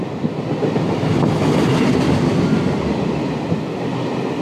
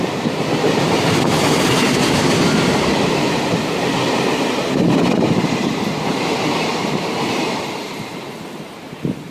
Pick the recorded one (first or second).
first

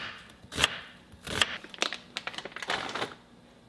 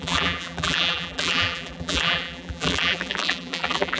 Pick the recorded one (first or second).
first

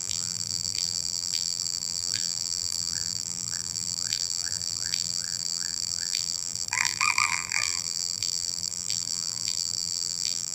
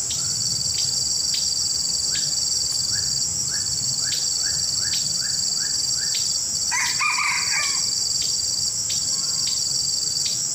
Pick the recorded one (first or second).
second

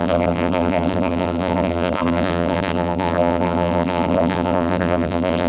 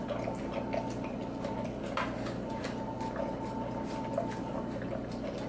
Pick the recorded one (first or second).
second